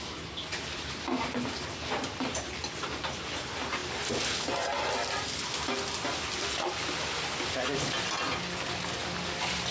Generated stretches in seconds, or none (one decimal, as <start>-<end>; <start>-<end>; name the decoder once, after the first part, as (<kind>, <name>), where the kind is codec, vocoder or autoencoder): none